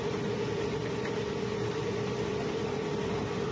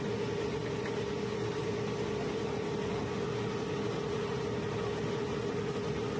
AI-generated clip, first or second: first